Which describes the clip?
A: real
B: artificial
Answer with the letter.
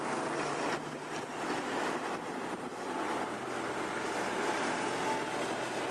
A